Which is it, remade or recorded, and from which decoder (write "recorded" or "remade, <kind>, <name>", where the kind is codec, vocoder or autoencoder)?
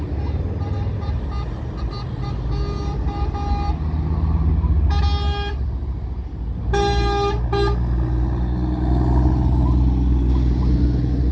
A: recorded